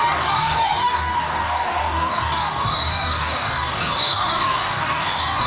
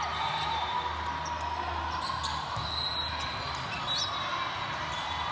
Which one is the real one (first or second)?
second